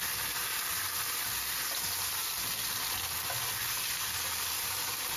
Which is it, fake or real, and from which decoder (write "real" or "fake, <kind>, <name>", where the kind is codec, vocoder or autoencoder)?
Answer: real